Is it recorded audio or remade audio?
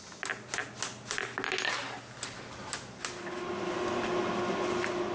recorded